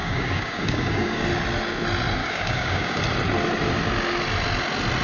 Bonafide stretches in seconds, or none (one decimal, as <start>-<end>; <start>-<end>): 1.2-2.2; 3.0-5.0